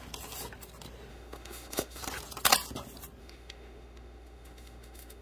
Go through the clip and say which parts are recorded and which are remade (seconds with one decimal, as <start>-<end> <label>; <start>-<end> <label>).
0.0-1.1 recorded; 1.1-2.0 remade; 2.0-3.2 recorded; 3.2-5.2 remade